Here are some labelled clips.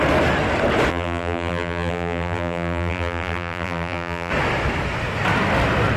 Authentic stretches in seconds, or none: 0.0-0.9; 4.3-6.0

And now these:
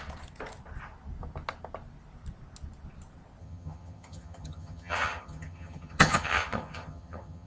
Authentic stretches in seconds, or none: 0.0-3.4